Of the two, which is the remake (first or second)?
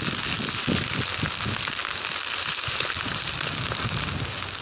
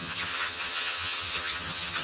second